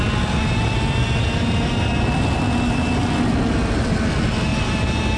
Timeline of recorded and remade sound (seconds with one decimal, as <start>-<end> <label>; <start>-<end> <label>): 0.0-5.2 recorded